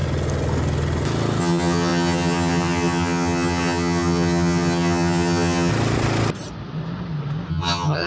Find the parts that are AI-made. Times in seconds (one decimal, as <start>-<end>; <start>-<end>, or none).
1.4-5.7; 7.5-8.1